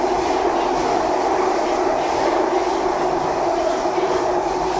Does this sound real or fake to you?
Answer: real